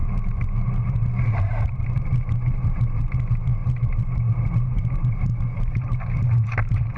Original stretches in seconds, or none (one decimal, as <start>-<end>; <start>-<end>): 0.0-0.5; 5.3-5.8